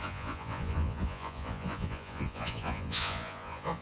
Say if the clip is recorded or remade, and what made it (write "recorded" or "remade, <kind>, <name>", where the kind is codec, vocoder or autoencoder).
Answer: remade, vocoder, Vocos